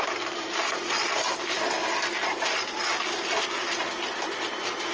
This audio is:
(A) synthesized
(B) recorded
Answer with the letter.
B